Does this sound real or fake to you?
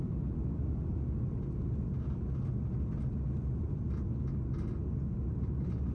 real